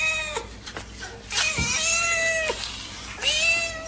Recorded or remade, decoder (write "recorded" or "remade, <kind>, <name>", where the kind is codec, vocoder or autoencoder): recorded